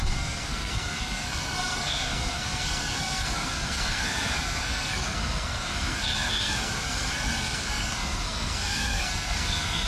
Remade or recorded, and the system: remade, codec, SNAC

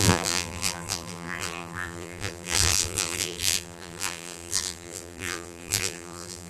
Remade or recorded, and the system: remade, vocoder, BigVGAN v2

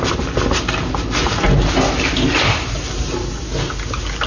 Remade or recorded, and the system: recorded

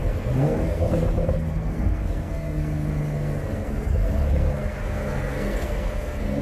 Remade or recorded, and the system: remade, codec, SNAC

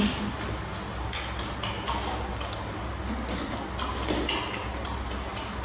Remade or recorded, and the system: recorded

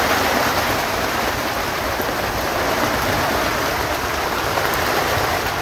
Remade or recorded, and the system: remade, vocoder, BigVGAN v2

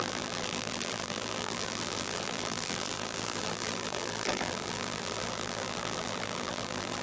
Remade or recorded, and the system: remade, vocoder, BigVGAN v2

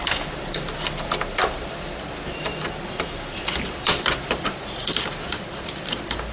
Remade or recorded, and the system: remade, vocoder, BigVGAN v2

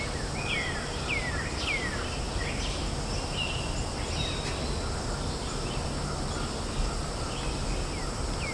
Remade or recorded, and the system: recorded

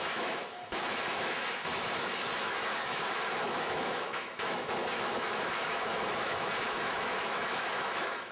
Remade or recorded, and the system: remade, autoencoder, DAC-VAE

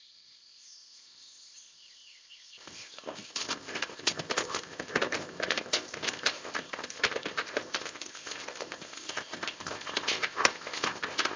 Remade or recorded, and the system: remade, codec, ZipCodec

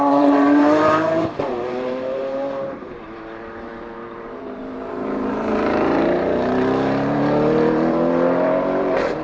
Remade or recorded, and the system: remade, vocoder, BigVGAN v2